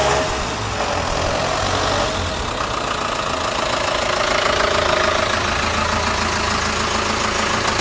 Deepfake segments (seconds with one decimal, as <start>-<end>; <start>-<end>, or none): 0.0-1.6